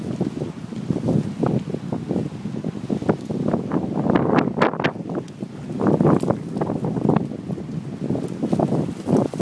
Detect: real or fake real